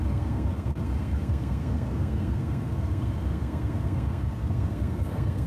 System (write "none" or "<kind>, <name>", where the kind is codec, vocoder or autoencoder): codec, SNAC